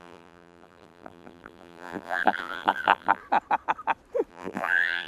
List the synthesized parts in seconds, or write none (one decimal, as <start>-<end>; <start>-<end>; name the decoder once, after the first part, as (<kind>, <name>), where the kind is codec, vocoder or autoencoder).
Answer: 0.0-3.2 (vocoder, BigVGAN v2); 4.3-5.1

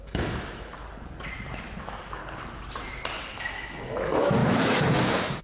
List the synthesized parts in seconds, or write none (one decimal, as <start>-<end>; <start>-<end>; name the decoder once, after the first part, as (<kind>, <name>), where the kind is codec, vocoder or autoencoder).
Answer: 0.0-0.8 (autoencoder, DAC-VAE); 1.8-2.2; 3.2-5.4

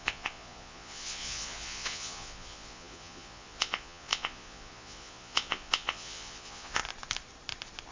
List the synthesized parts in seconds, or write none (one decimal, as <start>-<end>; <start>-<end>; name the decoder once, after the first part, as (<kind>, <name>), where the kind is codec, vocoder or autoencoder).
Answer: 0.0-6.8 (vocoder, Vocos)

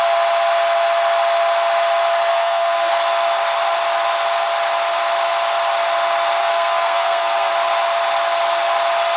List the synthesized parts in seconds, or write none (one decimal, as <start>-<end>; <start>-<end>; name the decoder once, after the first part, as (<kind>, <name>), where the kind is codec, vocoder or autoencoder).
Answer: 2.3-2.9 (codec, SNAC); 6.4-7.5

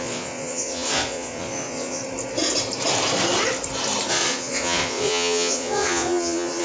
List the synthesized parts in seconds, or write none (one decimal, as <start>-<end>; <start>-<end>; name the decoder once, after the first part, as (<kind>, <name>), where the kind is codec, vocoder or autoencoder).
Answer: 0.0-2.0 (vocoder, Vocos); 4.1-6.6

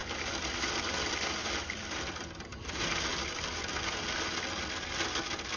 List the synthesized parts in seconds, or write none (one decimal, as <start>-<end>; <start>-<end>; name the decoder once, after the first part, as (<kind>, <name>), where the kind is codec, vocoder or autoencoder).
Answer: 0.0-0.9 (vocoder, BigVGAN v2); 1.4-3.0

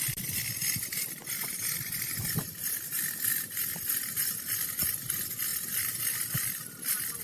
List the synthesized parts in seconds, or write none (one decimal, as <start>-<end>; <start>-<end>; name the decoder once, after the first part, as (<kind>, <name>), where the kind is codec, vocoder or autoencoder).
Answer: 5.5-6.8 (vocoder, BigVGAN v2)

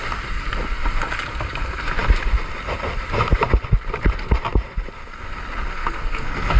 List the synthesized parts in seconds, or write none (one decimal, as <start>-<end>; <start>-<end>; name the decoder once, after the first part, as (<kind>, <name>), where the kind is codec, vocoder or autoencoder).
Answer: 5.7-6.6 (codec, SNAC)